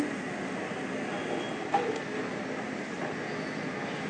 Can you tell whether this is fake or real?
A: real